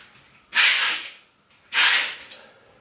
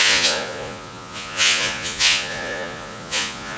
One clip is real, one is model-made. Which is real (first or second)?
first